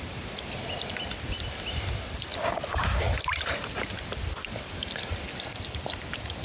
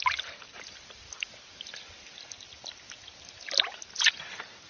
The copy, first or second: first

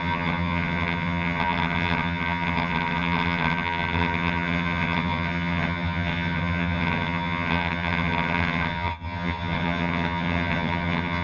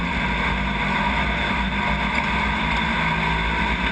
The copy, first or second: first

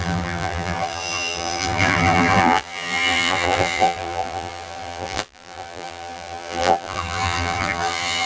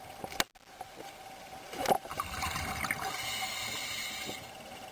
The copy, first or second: first